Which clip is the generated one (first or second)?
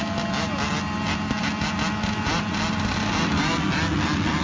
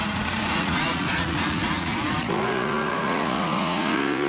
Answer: second